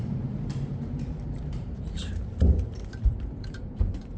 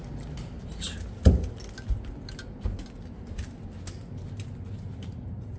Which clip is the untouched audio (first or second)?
second